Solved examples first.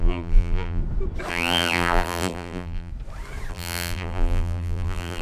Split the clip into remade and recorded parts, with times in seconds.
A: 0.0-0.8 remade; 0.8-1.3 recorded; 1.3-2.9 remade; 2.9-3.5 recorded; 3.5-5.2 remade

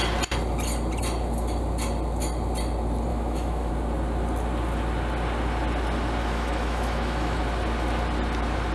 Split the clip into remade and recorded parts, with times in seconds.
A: 0.0-3.1 recorded; 3.1-3.7 remade; 3.7-6.2 recorded; 6.2-7.4 remade; 7.4-8.7 recorded

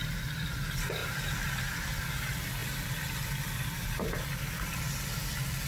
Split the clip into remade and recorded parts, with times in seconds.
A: 0.0-5.7 recorded